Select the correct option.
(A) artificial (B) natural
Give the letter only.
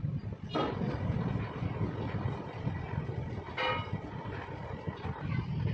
B